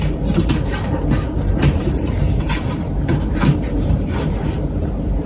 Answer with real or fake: fake